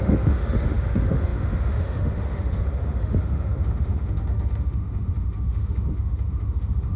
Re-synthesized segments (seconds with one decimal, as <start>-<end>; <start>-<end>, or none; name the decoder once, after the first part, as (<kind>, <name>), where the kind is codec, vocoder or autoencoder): 0.0-7.0 (autoencoder, DAC-VAE)